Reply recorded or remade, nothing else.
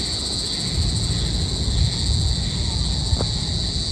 recorded